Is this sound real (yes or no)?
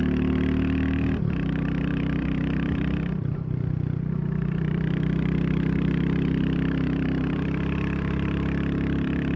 no